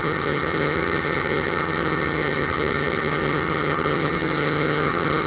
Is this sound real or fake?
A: fake